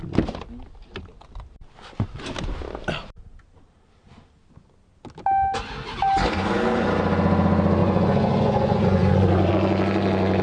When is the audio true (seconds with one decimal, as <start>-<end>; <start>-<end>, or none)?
0.0-7.8; 9.5-10.4

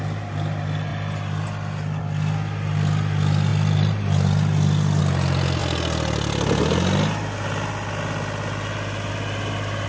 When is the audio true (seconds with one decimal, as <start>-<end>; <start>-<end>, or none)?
0.0-9.9

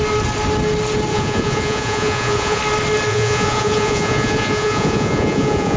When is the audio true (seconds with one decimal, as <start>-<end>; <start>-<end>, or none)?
0.0-1.1; 2.6-3.1

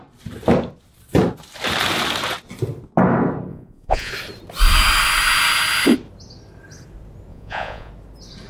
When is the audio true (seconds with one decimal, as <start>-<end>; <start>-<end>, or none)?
0.0-3.5; 4.1-7.3; 7.9-8.5

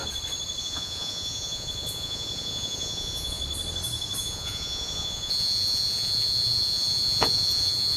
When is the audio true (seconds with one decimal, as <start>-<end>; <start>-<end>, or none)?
0.0-0.6; 3.4-4.2

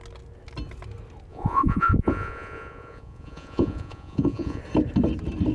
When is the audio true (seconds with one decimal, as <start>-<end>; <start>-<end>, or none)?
0.0-1.3; 4.6-5.5